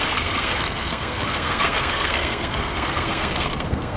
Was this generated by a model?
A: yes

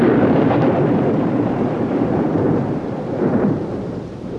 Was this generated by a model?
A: yes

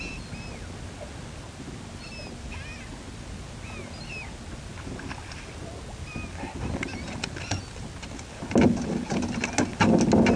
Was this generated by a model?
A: no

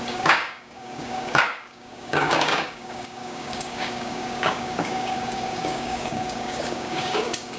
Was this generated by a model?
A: yes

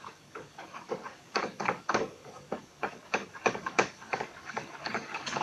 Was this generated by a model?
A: yes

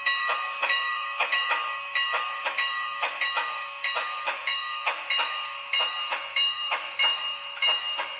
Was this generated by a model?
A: yes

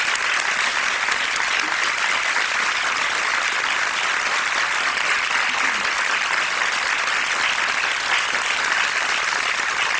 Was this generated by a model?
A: no